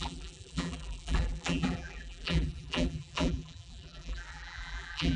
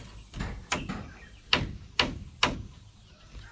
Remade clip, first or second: first